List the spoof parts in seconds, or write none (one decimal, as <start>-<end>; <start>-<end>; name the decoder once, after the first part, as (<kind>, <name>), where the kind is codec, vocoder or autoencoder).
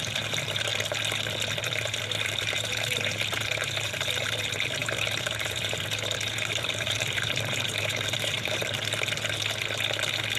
0.0-0.7 (vocoder, BigVGAN v2); 1.6-8.6